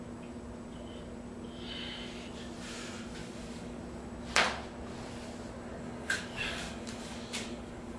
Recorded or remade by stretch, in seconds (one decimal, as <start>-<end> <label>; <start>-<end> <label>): 0.0-3.2 recorded; 3.2-3.8 remade; 3.8-5.7 recorded; 5.7-8.0 remade